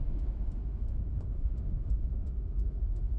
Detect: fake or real fake